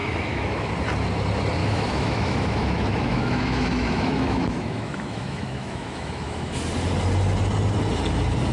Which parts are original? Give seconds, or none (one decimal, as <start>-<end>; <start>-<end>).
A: 0.7-1.6; 6.6-8.5